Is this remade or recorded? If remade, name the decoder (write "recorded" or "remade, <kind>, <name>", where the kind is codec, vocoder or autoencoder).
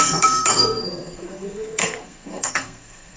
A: remade, codec, SNAC